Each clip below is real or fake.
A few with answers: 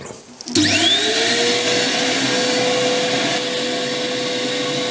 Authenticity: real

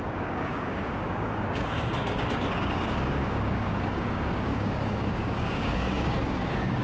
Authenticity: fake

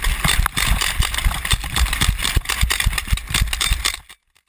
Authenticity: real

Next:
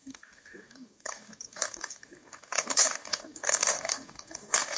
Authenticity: fake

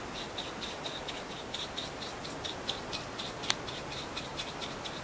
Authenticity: real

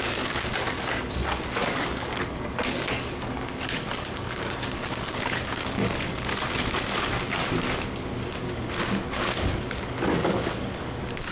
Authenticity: fake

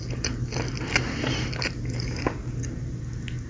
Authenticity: real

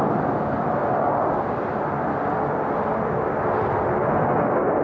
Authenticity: real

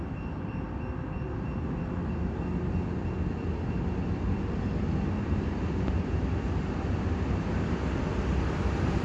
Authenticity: real